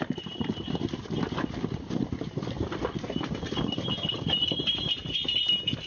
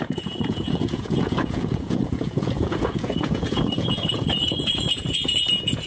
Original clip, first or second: first